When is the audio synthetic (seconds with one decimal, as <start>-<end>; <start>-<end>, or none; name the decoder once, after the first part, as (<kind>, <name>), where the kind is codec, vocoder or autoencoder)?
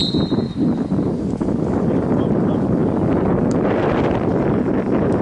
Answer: none